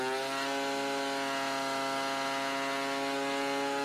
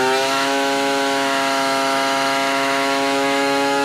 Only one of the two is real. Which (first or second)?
first